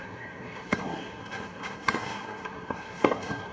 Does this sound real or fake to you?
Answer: fake